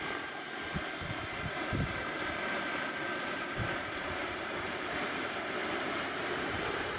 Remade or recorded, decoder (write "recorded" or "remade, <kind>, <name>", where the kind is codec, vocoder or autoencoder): remade, vocoder, BigVGAN v2